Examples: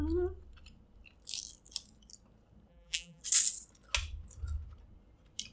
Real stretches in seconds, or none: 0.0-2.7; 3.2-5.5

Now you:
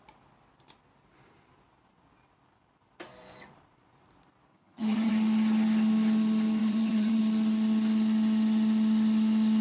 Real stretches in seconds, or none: 0.0-4.5; 5.1-6.6; 7.2-9.6